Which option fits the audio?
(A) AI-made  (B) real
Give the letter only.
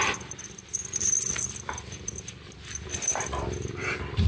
A